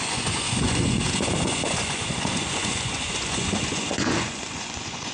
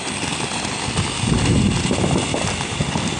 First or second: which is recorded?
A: second